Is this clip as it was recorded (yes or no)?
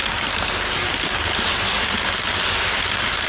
yes